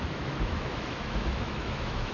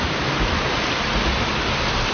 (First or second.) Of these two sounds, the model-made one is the first